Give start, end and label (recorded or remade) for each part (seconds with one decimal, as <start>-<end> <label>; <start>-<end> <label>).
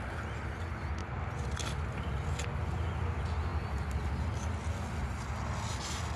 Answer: 0.0-6.2 recorded